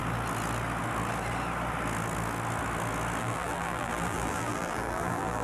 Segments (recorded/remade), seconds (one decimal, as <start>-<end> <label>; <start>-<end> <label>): 0.0-3.2 recorded; 3.2-5.4 remade

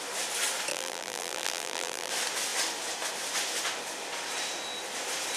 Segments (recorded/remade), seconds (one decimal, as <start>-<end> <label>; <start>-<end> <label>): 0.0-0.7 recorded; 0.7-2.1 remade; 2.1-5.4 recorded

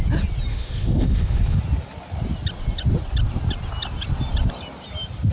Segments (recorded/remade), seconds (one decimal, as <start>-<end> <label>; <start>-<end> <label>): 0.0-0.5 recorded; 0.5-1.6 remade; 1.6-5.3 recorded

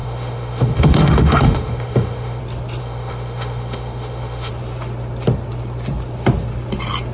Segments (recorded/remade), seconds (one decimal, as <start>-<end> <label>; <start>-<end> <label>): 0.0-2.4 remade; 2.4-2.8 recorded; 2.8-4.5 remade; 4.5-7.1 recorded

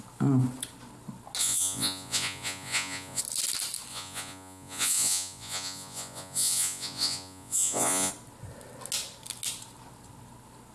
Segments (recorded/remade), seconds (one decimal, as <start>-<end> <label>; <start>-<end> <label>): 0.0-1.4 recorded; 1.4-3.2 remade; 3.2-3.9 recorded; 3.9-8.1 remade; 8.1-10.7 recorded

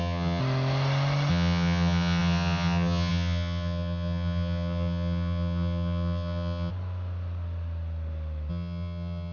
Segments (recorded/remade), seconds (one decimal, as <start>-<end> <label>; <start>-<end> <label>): 0.0-0.4 remade; 0.4-1.3 recorded; 1.3-6.7 remade; 6.7-8.5 recorded; 8.5-9.3 remade

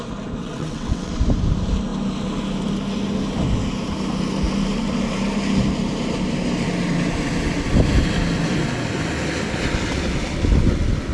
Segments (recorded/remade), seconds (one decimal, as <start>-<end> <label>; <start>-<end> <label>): 0.0-0.4 recorded; 0.4-1.1 remade; 1.1-11.1 recorded

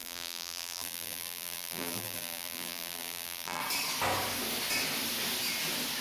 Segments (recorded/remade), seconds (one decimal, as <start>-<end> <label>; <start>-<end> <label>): 0.0-3.6 remade; 3.6-6.0 recorded